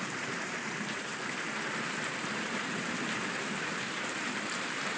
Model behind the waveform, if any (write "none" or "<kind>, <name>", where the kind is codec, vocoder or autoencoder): vocoder, BigVGAN v2